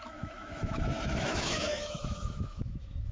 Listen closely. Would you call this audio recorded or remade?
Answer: remade